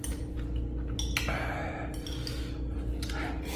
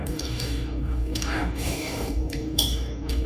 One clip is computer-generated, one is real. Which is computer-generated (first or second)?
second